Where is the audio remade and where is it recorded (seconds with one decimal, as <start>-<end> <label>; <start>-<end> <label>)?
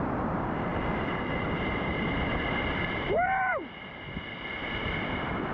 0.0-0.7 remade; 0.7-1.9 recorded; 1.9-3.5 remade; 3.5-4.4 recorded; 4.4-5.5 remade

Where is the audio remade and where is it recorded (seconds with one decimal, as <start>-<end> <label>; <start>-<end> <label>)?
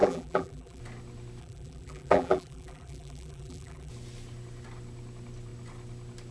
0.0-0.8 remade; 0.8-1.4 recorded; 1.4-3.9 remade; 3.9-6.3 recorded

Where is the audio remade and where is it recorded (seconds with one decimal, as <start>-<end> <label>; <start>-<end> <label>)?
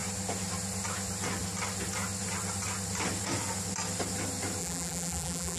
0.0-4.6 recorded; 4.6-5.6 remade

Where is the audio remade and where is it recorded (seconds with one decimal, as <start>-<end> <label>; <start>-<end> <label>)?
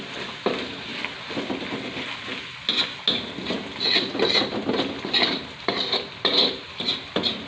0.0-0.9 remade; 0.9-5.4 recorded; 5.4-7.5 remade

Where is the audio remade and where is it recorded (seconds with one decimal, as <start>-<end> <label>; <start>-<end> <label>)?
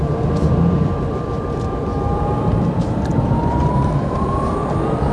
0.0-5.1 remade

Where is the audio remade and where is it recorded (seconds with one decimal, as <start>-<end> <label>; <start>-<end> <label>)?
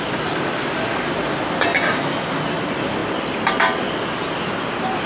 0.0-5.1 recorded